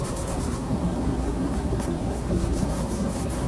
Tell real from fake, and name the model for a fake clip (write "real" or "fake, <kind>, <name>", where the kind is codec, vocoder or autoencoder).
fake, codec, SNAC